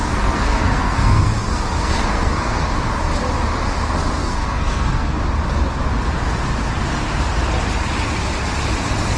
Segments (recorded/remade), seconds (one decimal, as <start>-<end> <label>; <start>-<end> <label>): 0.0-2.7 remade; 2.7-4.2 recorded; 4.2-5.2 remade; 5.2-9.2 recorded